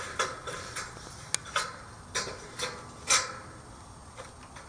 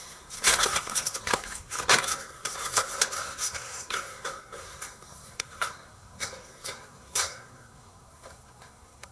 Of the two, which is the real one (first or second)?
first